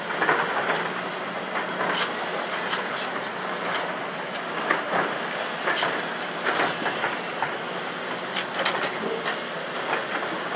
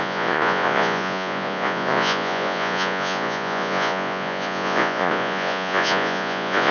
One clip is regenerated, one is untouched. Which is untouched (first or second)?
first